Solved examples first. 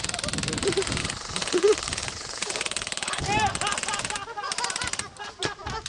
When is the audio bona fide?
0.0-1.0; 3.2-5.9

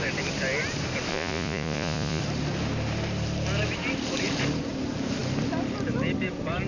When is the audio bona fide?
0.0-1.1; 2.2-6.7

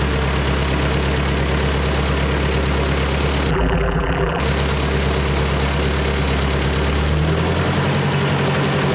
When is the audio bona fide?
0.0-3.5; 4.4-8.9

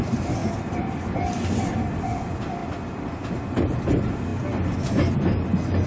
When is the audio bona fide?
0.0-0.4; 1.3-2.6; 3.3-5.9